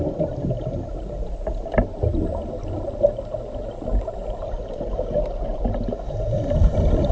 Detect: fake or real real